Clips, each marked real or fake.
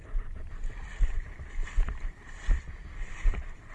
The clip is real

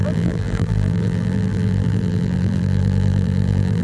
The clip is fake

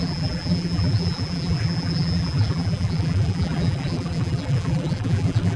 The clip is fake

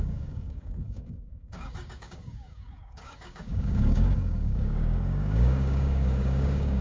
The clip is fake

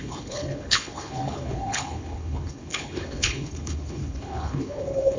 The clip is fake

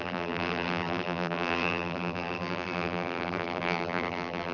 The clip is fake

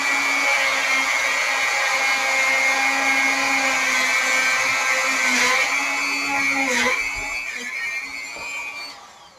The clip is real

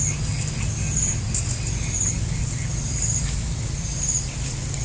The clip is real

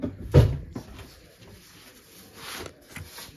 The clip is real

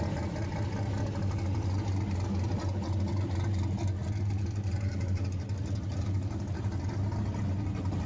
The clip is real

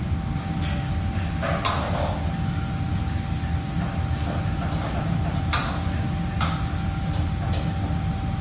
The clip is real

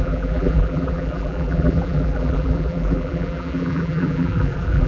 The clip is fake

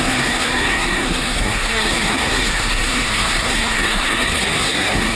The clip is fake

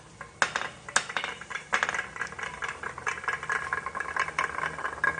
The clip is real